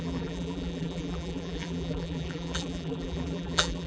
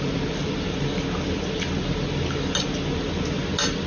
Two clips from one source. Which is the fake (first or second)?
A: first